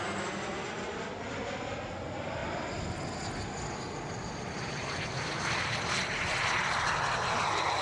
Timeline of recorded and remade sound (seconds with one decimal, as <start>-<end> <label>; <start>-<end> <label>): 0.0-7.8 recorded

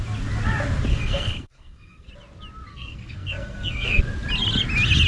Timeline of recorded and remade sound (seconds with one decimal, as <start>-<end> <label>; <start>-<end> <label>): 0.0-0.9 recorded; 0.9-2.1 remade; 2.1-2.7 recorded; 2.7-4.0 remade; 4.0-5.1 recorded